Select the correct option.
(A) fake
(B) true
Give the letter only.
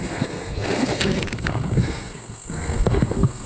A